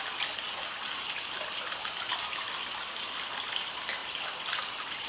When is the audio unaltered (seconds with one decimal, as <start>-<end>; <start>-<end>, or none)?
0.0-5.1